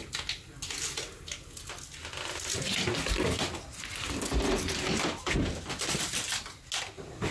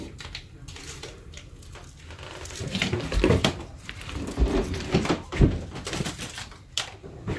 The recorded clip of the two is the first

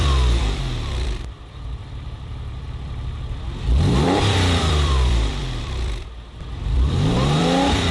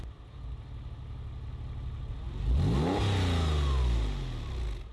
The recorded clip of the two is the second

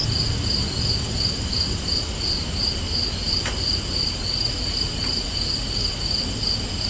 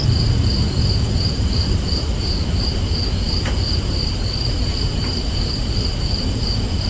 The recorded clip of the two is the first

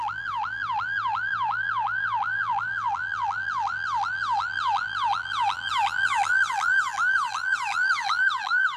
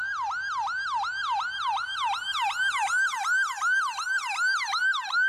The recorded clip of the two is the second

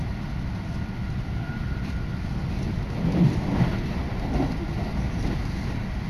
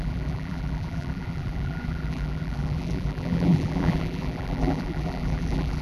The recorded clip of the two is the first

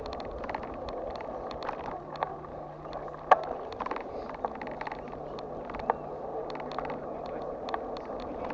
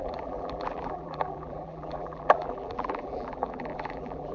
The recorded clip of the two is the first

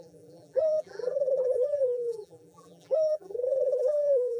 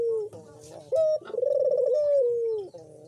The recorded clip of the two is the second